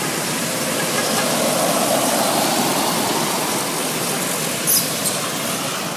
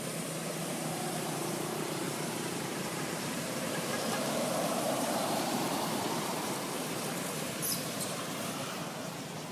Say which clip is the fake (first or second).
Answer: second